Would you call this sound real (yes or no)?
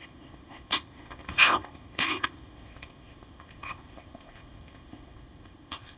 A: no